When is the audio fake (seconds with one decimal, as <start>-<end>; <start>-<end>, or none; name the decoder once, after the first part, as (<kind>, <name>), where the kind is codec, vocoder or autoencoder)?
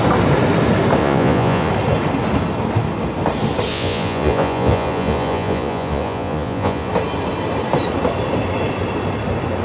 1.0-1.7 (vocoder, Vocos); 3.7-6.9